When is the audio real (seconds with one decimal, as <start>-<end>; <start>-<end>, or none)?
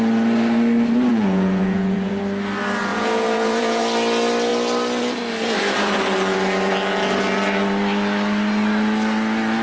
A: 0.0-1.1; 2.2-2.9; 3.8-9.6